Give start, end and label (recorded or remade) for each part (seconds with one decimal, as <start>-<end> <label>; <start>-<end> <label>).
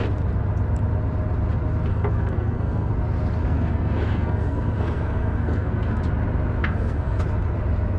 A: 0.0-1.9 recorded; 1.9-2.9 remade; 2.9-3.4 recorded; 3.4-6.0 remade; 6.0-6.6 recorded; 6.6-7.2 remade; 7.2-8.0 recorded